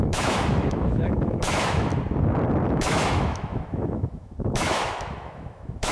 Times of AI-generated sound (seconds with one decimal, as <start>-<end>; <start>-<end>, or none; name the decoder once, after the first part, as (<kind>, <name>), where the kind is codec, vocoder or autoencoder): 0.0-1.9 (autoencoder, DAC-VAE); 2.7-5.9